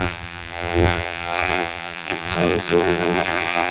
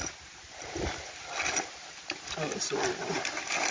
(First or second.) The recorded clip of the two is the second